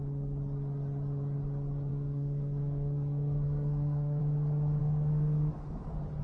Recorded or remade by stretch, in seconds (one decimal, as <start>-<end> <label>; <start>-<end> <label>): 0.0-1.9 recorded; 1.9-4.2 remade; 4.2-4.8 recorded; 4.8-5.8 remade; 5.8-6.2 recorded